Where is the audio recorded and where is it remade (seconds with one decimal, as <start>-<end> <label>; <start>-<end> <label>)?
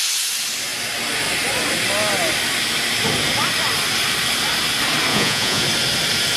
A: 0.0-5.1 recorded; 5.1-5.6 remade; 5.6-6.4 recorded